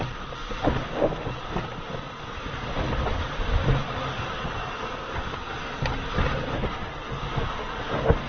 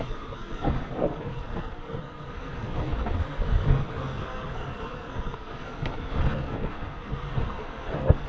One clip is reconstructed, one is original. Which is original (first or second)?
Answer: first